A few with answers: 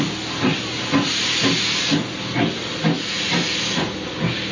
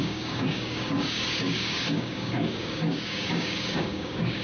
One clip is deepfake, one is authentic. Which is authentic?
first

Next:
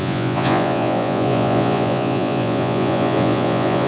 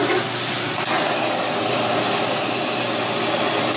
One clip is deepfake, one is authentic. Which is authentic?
second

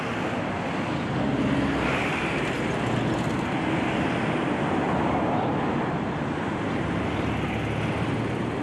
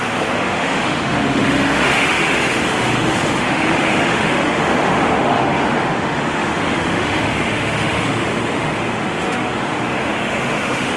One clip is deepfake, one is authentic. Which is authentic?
first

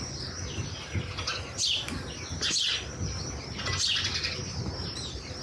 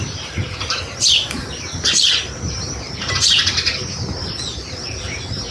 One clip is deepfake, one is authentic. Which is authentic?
first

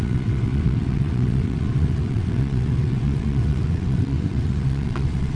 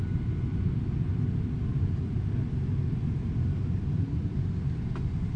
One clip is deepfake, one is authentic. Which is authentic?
second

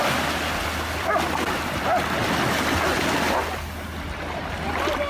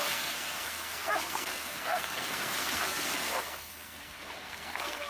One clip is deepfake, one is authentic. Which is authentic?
first